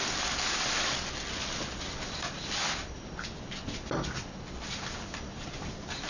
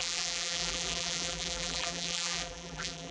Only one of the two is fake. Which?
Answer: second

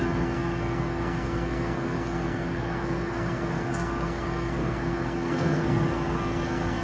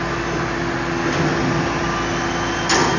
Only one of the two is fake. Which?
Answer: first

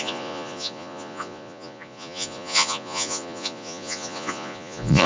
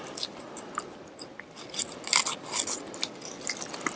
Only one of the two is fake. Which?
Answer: first